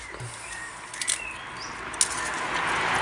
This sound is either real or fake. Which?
real